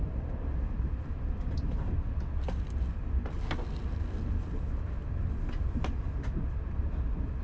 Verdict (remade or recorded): recorded